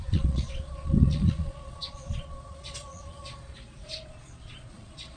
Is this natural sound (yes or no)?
no